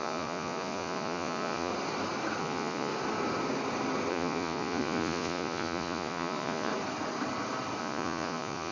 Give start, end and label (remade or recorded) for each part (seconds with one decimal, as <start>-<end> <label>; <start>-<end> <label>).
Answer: 0.0-1.7 remade; 1.7-2.4 recorded; 2.4-2.9 remade; 2.9-4.1 recorded; 4.1-6.7 remade; 6.7-7.8 recorded; 7.8-8.7 remade